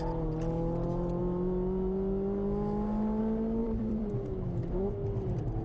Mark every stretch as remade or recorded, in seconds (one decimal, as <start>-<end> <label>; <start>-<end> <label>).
0.0-3.6 recorded; 3.6-4.1 remade; 4.1-5.6 recorded